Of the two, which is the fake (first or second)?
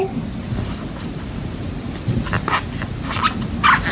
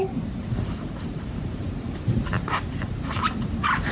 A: second